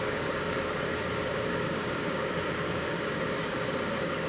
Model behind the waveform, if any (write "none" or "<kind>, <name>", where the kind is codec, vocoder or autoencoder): codec, DAC